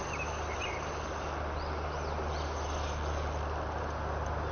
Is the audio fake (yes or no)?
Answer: no